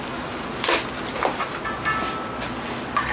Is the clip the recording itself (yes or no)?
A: yes